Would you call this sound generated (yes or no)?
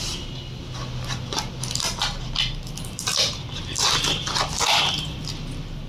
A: no